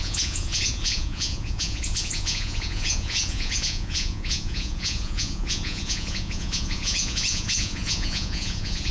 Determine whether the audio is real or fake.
fake